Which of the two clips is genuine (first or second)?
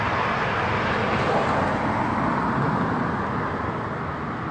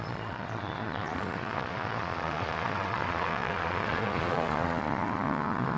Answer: first